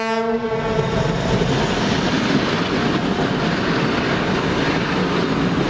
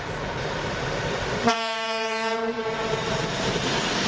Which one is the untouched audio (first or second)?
first